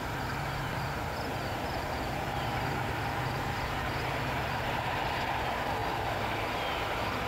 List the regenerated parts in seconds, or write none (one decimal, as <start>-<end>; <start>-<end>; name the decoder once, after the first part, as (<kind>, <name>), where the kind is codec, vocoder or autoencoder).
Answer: 0.7-5.0 (vocoder, BigVGAN v2)